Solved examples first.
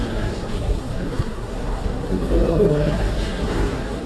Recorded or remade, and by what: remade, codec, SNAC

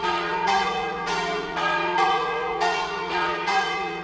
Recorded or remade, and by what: remade, vocoder, Vocos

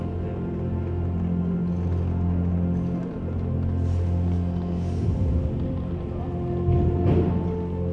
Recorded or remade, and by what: recorded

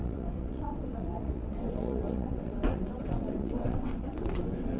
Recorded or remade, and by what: remade, vocoder, WaveNeXt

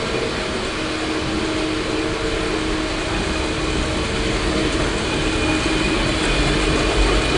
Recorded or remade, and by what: recorded